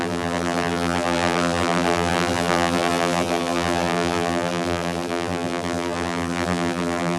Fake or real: fake